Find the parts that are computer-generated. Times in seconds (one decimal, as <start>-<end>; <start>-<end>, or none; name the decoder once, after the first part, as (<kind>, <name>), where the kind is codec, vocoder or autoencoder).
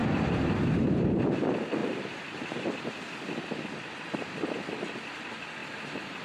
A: 0.0-1.4 (vocoder, BigVGAN v2); 1.8-2.7; 5.6-6.2